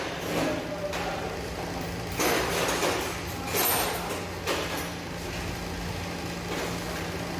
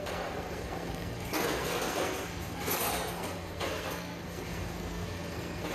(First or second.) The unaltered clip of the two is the first